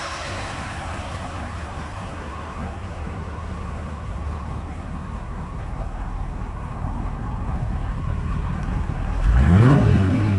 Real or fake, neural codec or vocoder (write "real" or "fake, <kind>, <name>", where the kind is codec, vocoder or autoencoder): fake, codec, SNAC